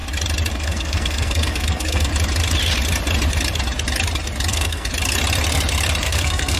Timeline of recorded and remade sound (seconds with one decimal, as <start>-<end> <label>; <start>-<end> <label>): 0.0-0.5 recorded; 0.5-2.1 remade; 2.1-4.5 recorded; 4.5-4.9 remade; 4.9-6.0 recorded; 6.0-6.6 remade

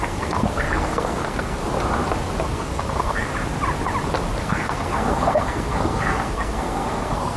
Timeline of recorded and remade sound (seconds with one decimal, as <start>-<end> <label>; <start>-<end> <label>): 0.0-1.6 remade; 1.6-2.5 recorded; 2.5-3.3 remade; 3.3-4.4 recorded; 4.4-7.4 remade

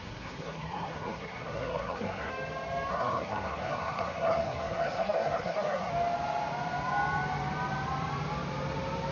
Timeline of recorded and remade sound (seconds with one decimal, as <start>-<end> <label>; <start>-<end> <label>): 0.0-2.3 remade; 2.3-2.9 recorded; 2.9-5.9 remade; 5.9-9.1 recorded

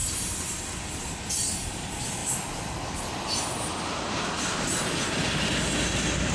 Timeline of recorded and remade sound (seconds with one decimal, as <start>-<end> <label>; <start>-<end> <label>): 0.0-6.3 recorded

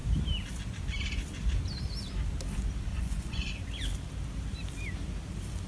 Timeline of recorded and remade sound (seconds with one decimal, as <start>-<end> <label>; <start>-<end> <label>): 0.0-2.9 recorded; 2.9-3.5 remade; 3.5-5.7 recorded

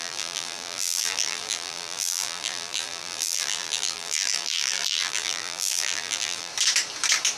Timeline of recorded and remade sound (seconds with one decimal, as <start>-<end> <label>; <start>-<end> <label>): 0.0-6.5 remade; 6.5-7.4 recorded